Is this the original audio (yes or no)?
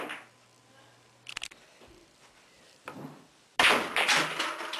yes